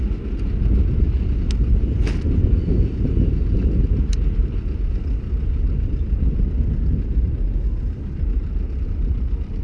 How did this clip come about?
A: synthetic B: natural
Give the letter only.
B